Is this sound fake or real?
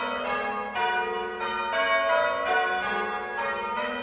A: real